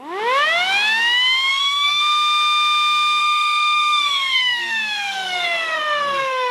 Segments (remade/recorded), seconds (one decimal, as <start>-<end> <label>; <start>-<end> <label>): 0.0-1.5 recorded; 1.5-2.0 remade; 2.0-3.2 recorded; 3.2-6.5 remade